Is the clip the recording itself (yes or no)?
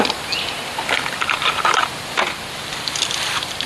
yes